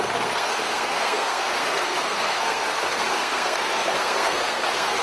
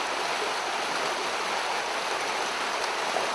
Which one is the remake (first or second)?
first